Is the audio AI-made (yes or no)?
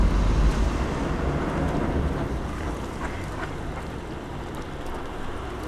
no